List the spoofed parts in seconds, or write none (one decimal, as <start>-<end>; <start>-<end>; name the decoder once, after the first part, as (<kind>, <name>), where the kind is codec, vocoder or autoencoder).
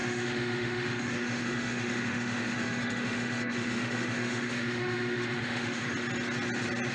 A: 0.0-5.8 (autoencoder, DAC-VAE)